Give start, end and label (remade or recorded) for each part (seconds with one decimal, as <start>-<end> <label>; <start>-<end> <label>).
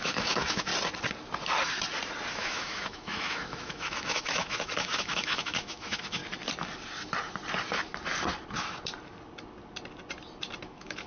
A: 0.0-0.7 remade; 0.7-2.3 recorded; 2.3-6.2 remade; 6.2-10.6 recorded; 10.6-11.1 remade